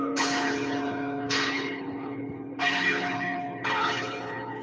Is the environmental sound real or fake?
fake